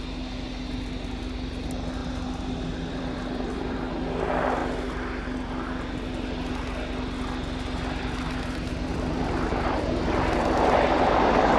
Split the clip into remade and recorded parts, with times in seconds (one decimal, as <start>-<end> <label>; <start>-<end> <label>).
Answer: 0.0-2.0 recorded; 2.0-3.8 remade; 3.8-8.7 recorded; 8.7-9.9 remade; 9.9-11.6 recorded